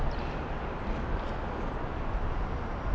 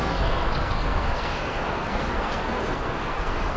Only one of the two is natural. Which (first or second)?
first